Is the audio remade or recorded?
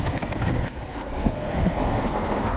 remade